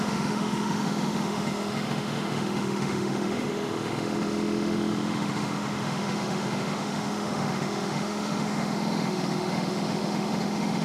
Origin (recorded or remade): remade